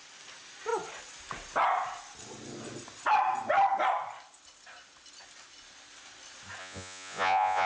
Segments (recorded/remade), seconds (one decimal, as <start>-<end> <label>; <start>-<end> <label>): 0.0-6.6 recorded; 6.6-7.7 remade